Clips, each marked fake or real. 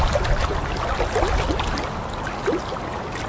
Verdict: real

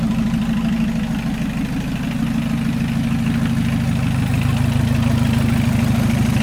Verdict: real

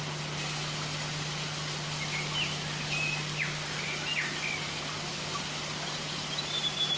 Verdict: real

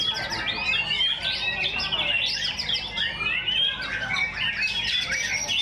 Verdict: real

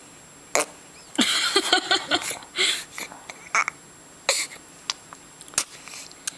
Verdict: real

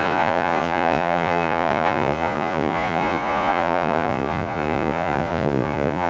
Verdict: fake